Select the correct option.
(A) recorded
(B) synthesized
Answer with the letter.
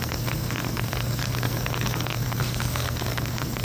B